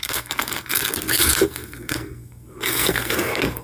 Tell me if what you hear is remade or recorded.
remade